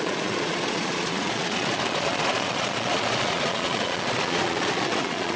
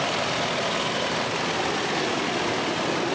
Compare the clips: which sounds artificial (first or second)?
first